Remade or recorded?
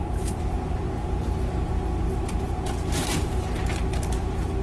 recorded